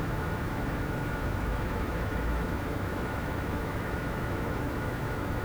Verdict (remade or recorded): remade